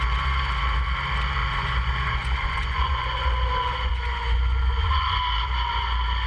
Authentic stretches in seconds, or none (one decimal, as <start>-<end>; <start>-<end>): 0.0-1.4; 5.2-6.3